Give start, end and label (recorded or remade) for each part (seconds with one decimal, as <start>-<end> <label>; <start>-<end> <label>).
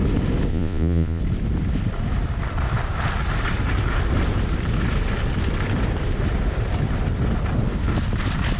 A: 0.0-0.5 recorded; 0.5-1.2 remade; 1.2-8.6 recorded